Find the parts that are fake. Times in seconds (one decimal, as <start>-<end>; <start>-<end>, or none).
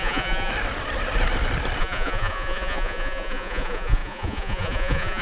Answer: 0.0-0.5; 1.8-5.2